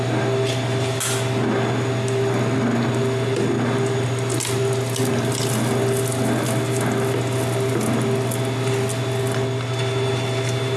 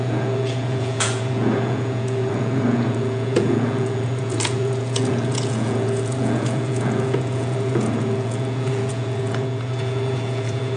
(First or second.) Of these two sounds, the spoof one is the second